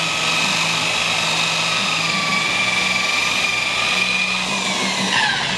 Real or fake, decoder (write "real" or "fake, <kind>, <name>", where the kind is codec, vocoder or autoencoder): real